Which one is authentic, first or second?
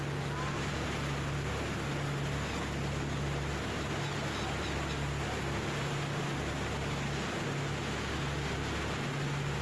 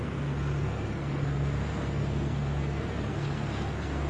first